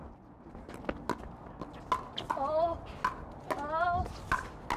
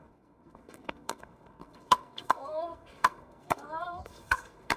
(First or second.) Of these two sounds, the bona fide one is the first